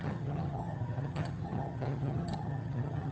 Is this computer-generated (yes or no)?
yes